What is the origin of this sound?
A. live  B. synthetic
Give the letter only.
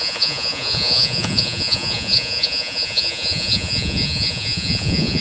B